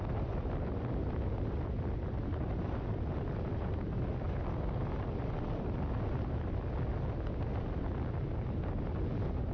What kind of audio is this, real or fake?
real